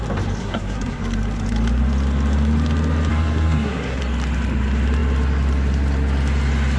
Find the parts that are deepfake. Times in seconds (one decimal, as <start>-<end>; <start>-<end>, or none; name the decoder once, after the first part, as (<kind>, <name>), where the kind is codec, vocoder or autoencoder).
0.4-1.0 (codec, SNAC); 3.1-4.0